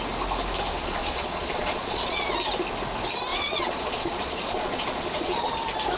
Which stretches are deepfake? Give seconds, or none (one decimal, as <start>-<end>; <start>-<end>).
0.7-2.3; 3.3-5.5